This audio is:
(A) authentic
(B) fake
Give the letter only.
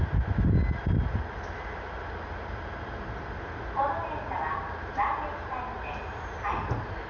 A